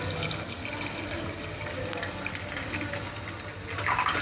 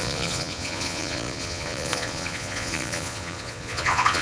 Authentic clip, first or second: first